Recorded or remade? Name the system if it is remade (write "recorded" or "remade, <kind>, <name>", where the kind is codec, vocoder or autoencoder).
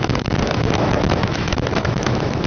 remade, autoencoder, DAC-VAE